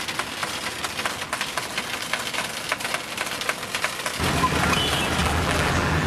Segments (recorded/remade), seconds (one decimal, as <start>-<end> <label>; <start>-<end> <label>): 0.0-5.2 recorded; 5.2-6.1 remade

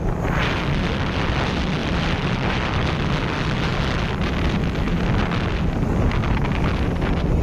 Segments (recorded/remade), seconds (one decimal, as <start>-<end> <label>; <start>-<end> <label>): 0.0-1.8 recorded; 1.8-3.0 remade; 3.0-7.4 recorded